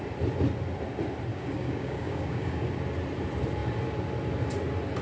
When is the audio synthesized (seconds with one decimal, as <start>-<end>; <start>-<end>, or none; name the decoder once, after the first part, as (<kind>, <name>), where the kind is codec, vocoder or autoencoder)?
1.3-2.7 (codec, DAC)